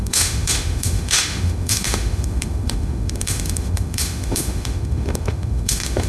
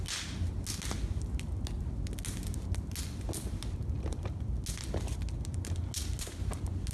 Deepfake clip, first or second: first